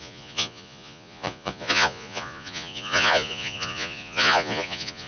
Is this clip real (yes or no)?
no